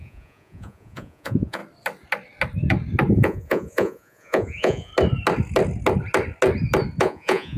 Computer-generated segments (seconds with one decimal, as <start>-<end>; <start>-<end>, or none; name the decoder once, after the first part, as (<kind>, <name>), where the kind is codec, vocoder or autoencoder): 0.0-1.6 (vocoder, Vocos); 3.1-4.9; 7.0-7.6